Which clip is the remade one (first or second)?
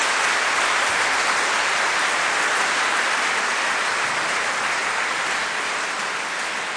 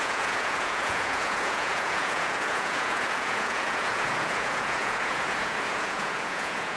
second